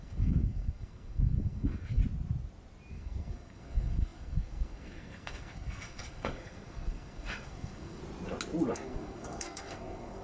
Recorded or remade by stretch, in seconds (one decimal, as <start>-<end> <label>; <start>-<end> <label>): 0.0-2.0 remade; 2.0-2.9 recorded; 2.9-8.0 remade; 8.0-8.7 recorded; 8.7-10.2 remade

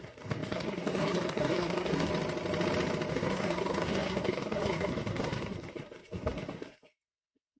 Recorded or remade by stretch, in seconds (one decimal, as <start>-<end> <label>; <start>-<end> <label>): 0.0-2.1 remade; 2.1-3.1 recorded; 3.1-7.6 remade